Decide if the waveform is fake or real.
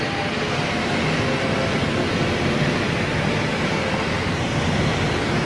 real